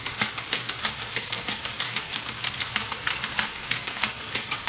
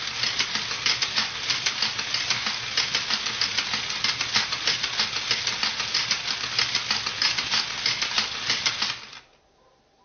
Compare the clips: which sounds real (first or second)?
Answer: second